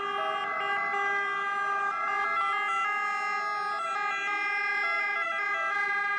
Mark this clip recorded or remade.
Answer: recorded